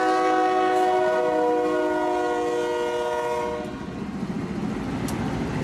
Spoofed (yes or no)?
no